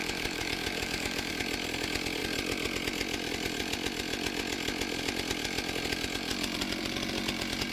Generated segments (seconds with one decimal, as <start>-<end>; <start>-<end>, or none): 0.0-1.3